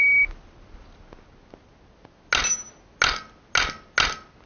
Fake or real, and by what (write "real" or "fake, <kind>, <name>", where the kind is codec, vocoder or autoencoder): real